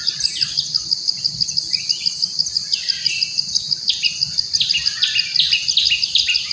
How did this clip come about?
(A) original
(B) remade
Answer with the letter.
A